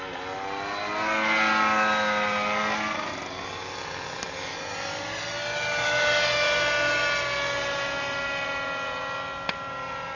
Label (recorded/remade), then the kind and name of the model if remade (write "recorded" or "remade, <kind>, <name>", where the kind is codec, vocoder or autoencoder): recorded